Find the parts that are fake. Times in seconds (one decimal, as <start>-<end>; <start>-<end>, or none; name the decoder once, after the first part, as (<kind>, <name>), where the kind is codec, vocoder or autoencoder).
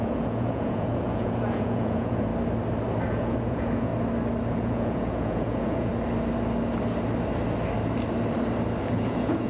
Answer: 0.0-2.3 (vocoder, Vocos); 3.1-3.9; 4.5-5.9; 8.8-9.5